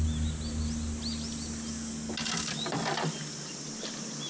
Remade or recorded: recorded